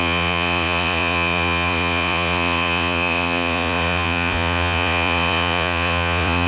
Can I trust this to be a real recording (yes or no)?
no